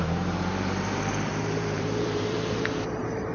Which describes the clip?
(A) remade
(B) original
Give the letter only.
A